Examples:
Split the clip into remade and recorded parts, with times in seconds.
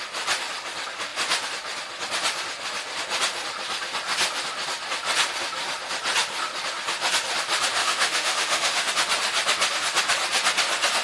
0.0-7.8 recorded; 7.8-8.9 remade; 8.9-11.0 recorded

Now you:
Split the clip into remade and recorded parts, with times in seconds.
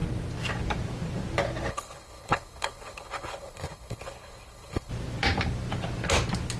0.0-1.7 recorded; 1.7-4.9 remade; 4.9-6.6 recorded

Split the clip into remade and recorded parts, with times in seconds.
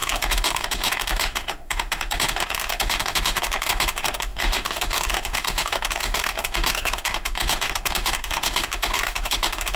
0.0-9.8 remade